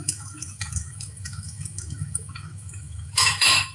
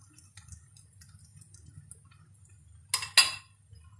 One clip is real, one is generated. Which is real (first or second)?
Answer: second